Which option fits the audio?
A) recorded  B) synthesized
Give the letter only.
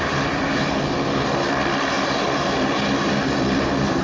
B